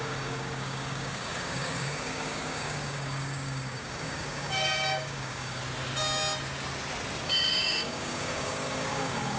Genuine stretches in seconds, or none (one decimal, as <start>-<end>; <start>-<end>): 5.6-7.2